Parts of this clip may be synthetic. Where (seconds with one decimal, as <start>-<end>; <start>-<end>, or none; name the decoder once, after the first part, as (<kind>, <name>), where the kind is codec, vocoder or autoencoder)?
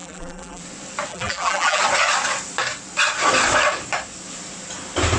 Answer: 0.0-0.6 (vocoder, BigVGAN v2); 1.1-1.8